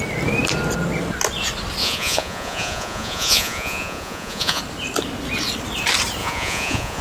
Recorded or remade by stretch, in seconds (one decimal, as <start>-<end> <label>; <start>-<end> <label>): 0.0-1.8 recorded; 1.8-4.6 remade; 4.6-6.2 recorded; 6.2-7.0 remade

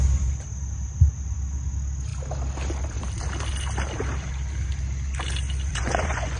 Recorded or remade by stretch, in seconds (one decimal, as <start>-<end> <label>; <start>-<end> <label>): 0.0-5.7 recorded; 5.7-6.4 remade

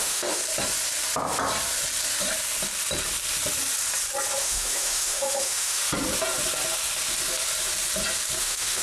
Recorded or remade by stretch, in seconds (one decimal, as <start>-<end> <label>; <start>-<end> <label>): 0.0-0.4 remade; 0.4-4.4 recorded; 4.4-5.8 remade; 5.8-8.4 recorded; 8.4-8.8 remade

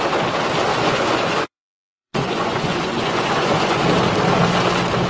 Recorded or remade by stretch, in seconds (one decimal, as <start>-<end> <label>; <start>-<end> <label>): 0.0-0.7 recorded; 0.7-3.8 remade; 3.8-5.1 recorded

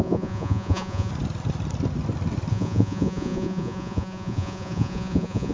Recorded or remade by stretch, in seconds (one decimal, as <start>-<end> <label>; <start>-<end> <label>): 0.0-1.1 remade; 1.1-2.5 recorded; 2.5-5.5 remade

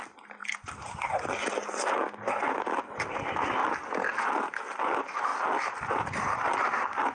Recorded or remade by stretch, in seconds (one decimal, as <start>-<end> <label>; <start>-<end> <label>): 0.0-0.4 remade; 0.4-3.1 recorded; 3.1-3.6 remade; 3.6-4.3 recorded; 4.3-7.1 remade

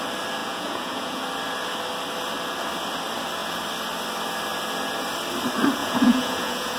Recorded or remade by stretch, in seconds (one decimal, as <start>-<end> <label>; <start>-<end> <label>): 0.0-0.4 recorded; 0.4-1.2 remade; 1.2-5.8 recorded; 5.8-6.8 remade

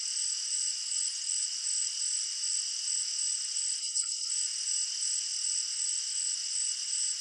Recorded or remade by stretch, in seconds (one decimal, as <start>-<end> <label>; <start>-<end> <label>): 0.0-3.8 recorded; 3.8-4.3 remade; 4.3-7.2 recorded